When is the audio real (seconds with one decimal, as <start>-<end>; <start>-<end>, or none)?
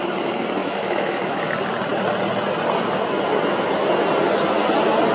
0.0-0.6; 1.4-5.1